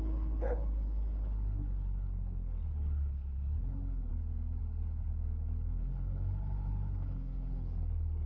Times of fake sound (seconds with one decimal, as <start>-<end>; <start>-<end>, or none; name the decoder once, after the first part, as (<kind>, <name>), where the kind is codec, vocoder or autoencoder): 0.0-8.3 (codec, HILCodec)